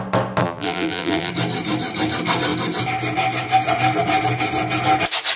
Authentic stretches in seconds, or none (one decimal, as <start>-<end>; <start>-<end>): 0.0-0.4; 1.3-5.4